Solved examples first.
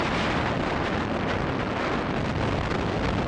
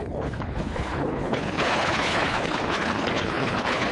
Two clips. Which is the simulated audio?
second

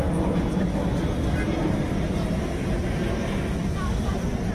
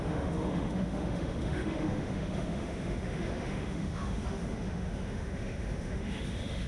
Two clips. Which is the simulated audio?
second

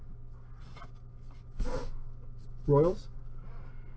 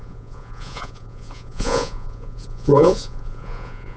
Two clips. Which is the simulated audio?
second